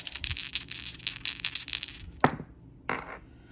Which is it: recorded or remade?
recorded